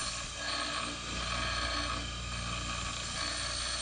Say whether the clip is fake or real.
real